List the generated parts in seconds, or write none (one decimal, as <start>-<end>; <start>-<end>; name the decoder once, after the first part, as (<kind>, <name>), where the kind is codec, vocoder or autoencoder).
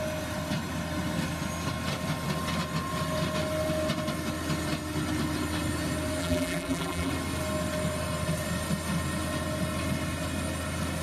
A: 6.2-7.1 (vocoder, BigVGAN v2)